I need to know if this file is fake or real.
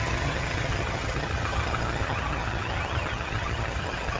fake